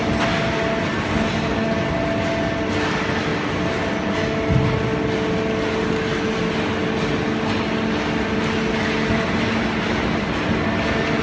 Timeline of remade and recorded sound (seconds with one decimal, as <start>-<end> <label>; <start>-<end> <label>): 0.0-11.2 recorded